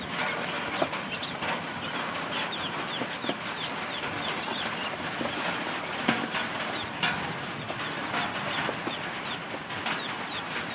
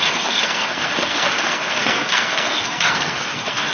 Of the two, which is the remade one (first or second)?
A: second